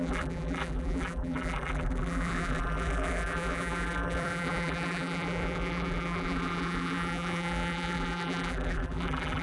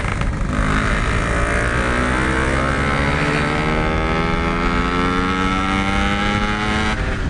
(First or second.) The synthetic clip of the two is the first